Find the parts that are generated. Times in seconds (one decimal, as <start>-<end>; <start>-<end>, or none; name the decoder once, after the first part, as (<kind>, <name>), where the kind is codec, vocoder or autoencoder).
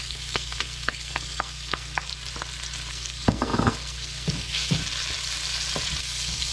0.0-2.1 (codec, SNAC); 2.9-4.8; 6.0-6.5